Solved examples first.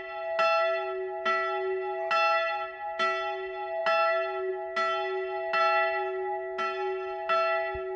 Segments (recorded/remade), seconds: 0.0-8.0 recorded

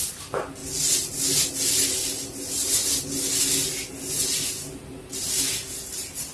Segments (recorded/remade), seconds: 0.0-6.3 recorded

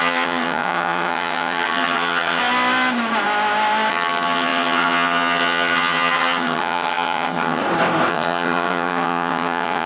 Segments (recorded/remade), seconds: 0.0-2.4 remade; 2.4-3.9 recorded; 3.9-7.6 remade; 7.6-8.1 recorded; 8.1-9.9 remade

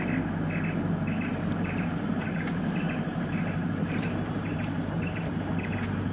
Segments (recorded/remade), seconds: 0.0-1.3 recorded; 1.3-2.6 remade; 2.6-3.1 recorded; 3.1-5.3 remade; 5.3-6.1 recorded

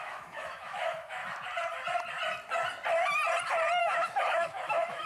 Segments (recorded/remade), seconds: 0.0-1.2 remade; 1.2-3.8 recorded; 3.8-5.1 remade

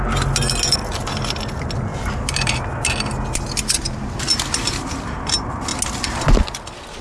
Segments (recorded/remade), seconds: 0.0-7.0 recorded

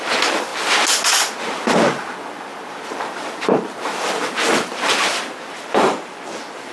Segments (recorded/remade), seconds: 0.0-0.5 remade; 0.5-1.4 recorded; 1.4-6.7 remade